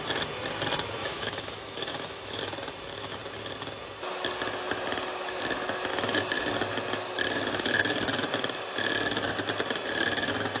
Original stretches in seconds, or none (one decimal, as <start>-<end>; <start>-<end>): 0.0-1.0; 2.4-5.9; 6.5-10.6